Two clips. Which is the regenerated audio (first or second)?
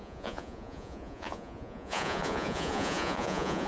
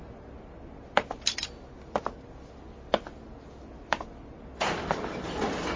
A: first